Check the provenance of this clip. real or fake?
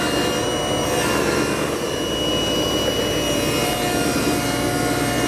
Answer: real